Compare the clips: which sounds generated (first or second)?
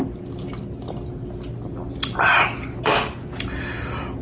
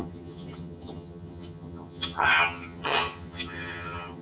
second